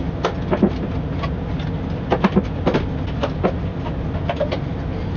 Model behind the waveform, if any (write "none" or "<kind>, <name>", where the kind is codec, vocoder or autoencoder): none